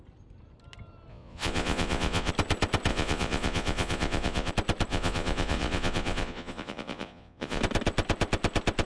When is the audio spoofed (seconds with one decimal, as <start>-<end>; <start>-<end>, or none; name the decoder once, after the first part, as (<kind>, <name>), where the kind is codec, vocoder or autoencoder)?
1.1-2.3 (vocoder, Vocos); 2.9-4.5; 4.9-7.6

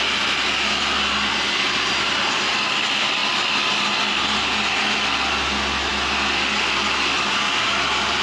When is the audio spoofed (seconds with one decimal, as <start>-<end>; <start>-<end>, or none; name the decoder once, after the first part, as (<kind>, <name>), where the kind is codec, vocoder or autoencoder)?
none